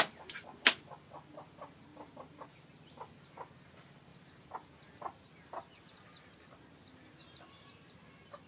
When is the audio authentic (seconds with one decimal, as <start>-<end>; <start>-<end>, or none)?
0.0-8.5